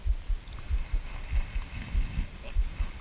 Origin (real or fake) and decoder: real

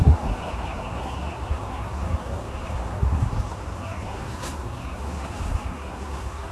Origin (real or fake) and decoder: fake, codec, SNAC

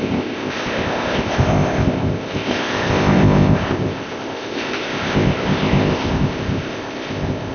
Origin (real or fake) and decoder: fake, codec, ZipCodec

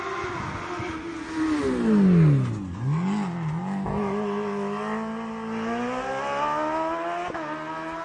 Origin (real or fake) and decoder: real